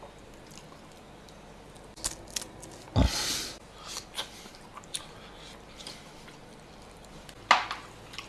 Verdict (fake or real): real